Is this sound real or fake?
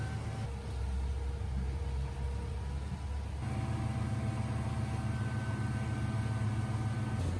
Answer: real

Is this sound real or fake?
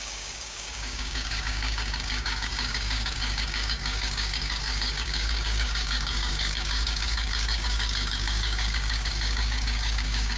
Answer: fake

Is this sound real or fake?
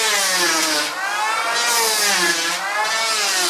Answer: real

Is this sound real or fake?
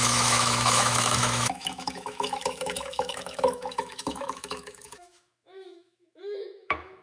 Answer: fake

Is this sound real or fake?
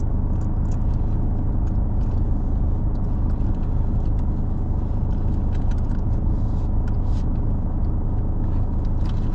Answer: real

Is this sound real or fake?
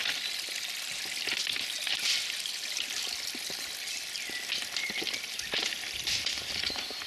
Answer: real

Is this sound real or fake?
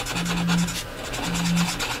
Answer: real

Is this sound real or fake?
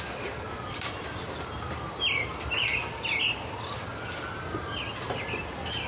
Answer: real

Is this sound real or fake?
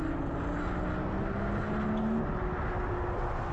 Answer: real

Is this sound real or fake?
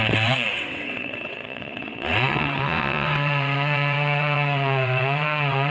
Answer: fake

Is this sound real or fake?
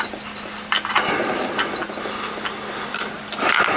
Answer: real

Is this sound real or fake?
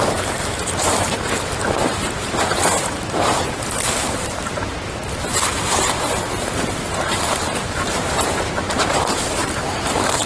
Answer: fake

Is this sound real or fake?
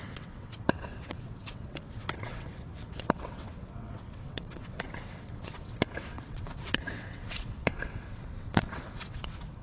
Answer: fake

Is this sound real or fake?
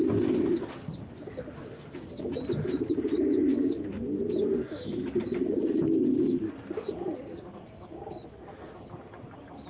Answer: real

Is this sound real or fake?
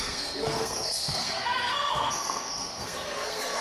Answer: fake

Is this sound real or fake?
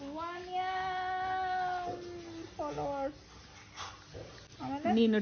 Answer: real